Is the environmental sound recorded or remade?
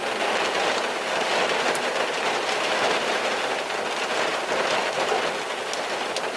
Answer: recorded